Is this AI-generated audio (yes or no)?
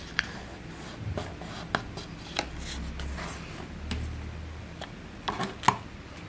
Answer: no